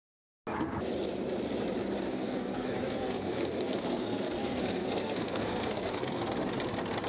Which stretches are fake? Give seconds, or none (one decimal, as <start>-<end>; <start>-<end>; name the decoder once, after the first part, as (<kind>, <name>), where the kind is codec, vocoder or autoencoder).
2.1-6.2 (codec, SNAC)